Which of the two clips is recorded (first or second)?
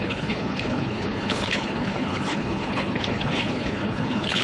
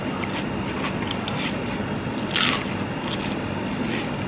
second